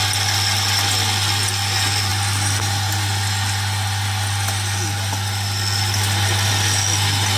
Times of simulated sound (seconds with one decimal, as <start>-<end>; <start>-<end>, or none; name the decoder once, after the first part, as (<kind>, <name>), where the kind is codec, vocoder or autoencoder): none